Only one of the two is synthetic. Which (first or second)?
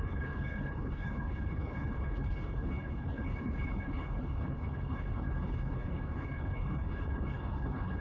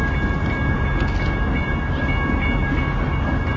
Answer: first